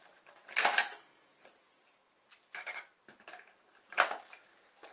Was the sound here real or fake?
real